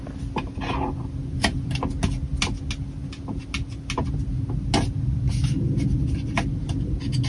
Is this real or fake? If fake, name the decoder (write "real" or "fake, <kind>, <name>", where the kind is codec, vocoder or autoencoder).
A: real